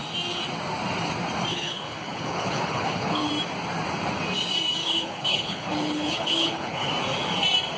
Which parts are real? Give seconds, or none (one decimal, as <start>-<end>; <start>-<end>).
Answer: 0.0-1.5; 3.3-4.8; 6.9-7.8